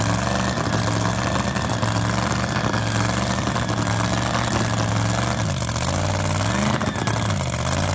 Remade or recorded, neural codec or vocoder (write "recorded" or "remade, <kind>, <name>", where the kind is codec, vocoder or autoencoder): recorded